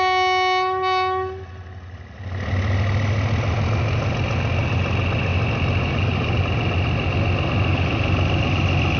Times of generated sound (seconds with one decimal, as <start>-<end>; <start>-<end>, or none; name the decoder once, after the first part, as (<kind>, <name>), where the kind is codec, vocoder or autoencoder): none

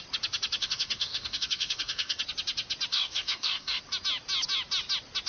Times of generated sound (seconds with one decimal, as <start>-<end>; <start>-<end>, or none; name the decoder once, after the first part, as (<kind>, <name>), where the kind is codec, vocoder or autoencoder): 0.6-2.2 (codec, DAC); 2.9-3.8

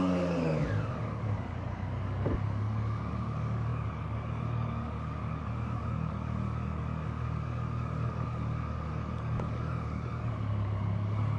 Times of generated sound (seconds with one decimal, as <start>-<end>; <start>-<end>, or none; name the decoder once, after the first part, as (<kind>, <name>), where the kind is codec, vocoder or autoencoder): 0.0-11.4 (codec, DAC)

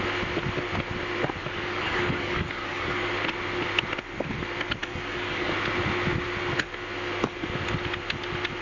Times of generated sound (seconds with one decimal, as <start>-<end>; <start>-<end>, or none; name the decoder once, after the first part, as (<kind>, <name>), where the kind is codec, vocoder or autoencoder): 1.4-3.1 (codec, DAC); 4.8-5.5

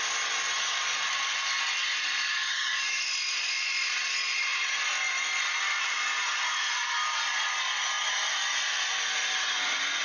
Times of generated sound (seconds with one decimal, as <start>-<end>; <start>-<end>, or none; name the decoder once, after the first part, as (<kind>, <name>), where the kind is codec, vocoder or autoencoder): 2.3-3.0 (codec, DAC)

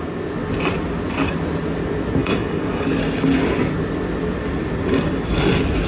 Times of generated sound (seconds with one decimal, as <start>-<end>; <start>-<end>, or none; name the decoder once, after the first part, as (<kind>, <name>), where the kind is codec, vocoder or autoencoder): 2.2-3.0 (codec, DAC)